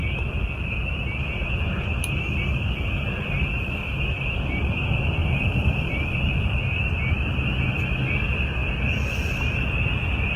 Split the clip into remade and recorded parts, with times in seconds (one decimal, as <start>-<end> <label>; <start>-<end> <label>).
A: 0.0-5.2 recorded; 5.2-6.6 remade; 6.6-10.4 recorded